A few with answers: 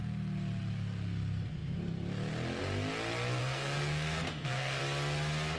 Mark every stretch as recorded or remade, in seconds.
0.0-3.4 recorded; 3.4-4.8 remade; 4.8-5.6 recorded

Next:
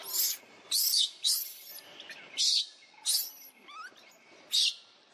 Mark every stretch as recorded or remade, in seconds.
0.0-5.1 recorded

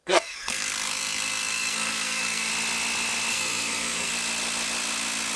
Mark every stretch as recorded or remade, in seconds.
0.0-2.5 remade; 2.5-3.3 recorded; 3.3-4.1 remade; 4.1-5.4 recorded

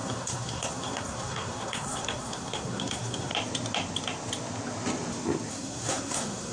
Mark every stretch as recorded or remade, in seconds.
0.0-3.3 remade; 3.3-5.5 recorded; 5.5-6.5 remade

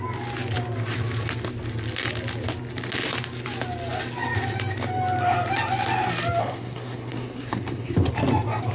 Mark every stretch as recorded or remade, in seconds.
0.0-6.4 recorded; 6.4-8.1 remade; 8.1-8.7 recorded

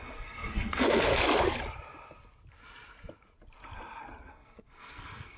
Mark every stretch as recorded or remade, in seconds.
0.0-1.1 remade; 1.1-4.3 recorded; 4.3-5.4 remade

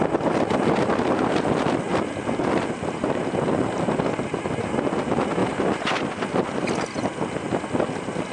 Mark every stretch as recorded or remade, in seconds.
0.0-8.3 recorded

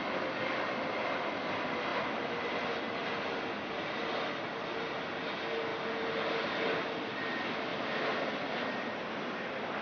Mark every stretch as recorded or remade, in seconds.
0.0-9.8 recorded